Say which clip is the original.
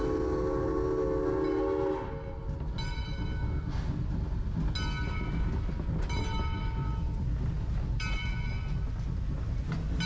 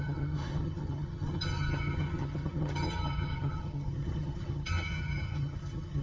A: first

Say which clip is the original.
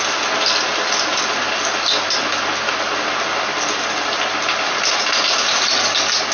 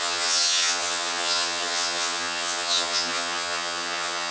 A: first